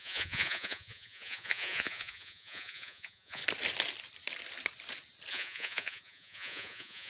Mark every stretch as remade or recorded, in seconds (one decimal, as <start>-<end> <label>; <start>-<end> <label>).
0.0-3.4 remade; 3.4-5.3 recorded; 5.3-7.1 remade